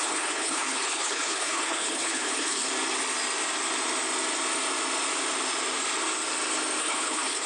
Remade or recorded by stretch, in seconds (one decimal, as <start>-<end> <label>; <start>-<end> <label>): 0.0-2.7 remade; 2.7-6.8 recorded; 6.8-7.5 remade